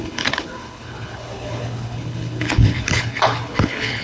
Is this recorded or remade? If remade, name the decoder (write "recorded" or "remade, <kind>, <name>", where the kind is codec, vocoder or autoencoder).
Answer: remade, codec, HILCodec